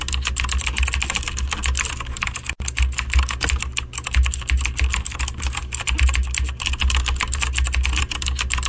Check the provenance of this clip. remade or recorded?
recorded